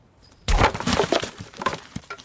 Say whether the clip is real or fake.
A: fake